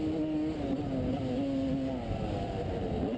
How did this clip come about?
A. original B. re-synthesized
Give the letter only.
A